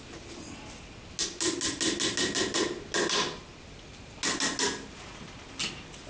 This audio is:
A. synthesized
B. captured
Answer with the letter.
B